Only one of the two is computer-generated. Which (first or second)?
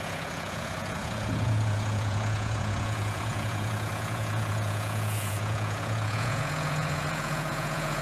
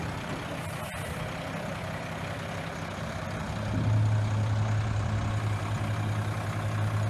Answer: first